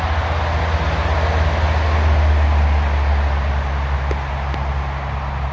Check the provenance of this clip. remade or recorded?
recorded